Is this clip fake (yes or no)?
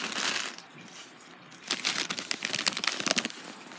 no